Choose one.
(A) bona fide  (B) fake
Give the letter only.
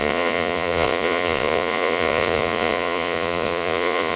B